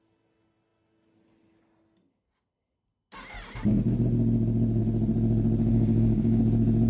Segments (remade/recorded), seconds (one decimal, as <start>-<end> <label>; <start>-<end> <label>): 0.0-5.7 recorded; 5.7-6.4 remade; 6.4-6.9 recorded